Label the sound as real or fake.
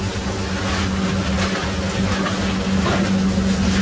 real